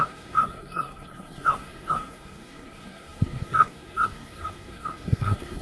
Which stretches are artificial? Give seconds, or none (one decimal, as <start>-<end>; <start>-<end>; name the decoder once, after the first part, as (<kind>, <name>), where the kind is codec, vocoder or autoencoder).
0.0-5.6 (codec, SNAC)